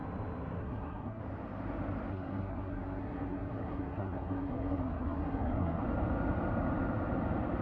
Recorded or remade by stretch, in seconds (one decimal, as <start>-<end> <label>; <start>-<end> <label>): 0.0-0.6 recorded; 0.6-1.2 remade; 1.2-2.1 recorded; 2.1-5.8 remade; 5.8-7.6 recorded